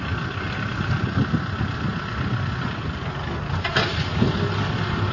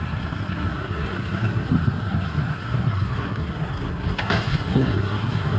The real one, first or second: first